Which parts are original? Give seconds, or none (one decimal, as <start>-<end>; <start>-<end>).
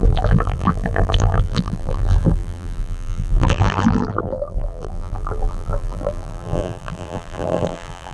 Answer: none